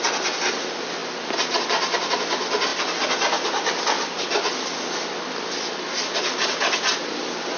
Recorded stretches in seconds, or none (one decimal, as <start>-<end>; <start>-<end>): 0.0-7.6